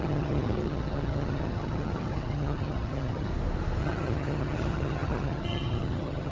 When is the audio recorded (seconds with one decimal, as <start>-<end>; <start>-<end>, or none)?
3.3-3.8